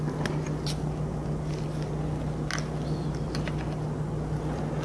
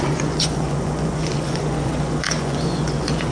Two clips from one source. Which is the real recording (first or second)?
first